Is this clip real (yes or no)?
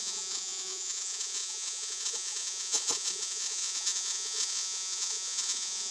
no